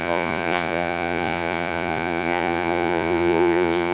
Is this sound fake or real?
fake